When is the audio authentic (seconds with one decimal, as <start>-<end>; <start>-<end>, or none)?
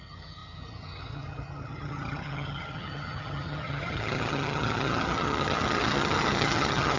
none